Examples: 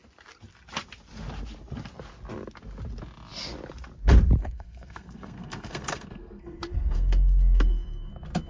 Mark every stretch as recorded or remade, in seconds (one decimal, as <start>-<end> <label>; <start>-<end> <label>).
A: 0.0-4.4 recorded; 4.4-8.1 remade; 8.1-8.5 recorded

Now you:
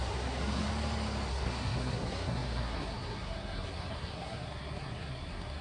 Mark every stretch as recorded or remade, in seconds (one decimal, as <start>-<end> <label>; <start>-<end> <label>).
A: 0.0-0.7 remade; 0.7-1.3 recorded; 1.3-5.6 remade

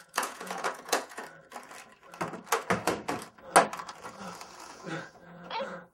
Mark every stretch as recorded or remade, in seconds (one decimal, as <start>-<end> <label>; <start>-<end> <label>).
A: 0.0-1.2 remade; 1.2-4.7 recorded; 4.7-5.9 remade

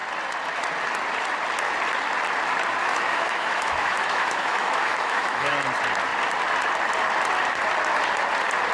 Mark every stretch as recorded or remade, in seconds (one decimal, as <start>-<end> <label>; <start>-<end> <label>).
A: 0.0-2.8 recorded; 2.8-5.5 remade; 5.5-8.7 recorded

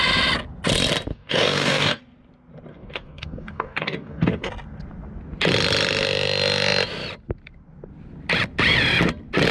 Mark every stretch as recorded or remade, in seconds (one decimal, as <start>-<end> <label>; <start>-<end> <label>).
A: 0.0-1.1 recorded; 1.1-2.0 remade; 2.0-2.7 recorded; 2.7-4.5 remade; 4.5-9.5 recorded